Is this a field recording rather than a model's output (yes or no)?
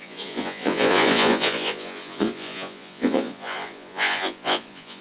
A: no